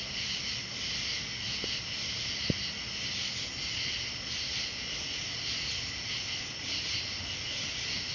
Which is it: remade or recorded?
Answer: recorded